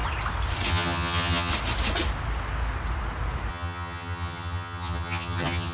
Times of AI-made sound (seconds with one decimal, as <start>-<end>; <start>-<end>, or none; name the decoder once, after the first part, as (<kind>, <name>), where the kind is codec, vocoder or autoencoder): 0.7-1.5 (vocoder, HiFi-GAN); 3.5-5.7